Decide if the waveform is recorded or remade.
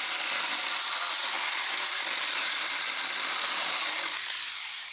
recorded